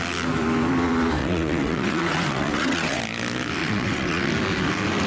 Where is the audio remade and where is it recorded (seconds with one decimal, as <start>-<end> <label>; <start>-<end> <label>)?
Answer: 0.0-1.2 recorded; 1.2-3.0 remade; 3.0-3.6 recorded; 3.6-4.3 remade; 4.3-5.1 recorded